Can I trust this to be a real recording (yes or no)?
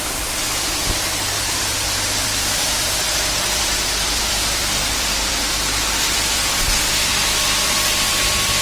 no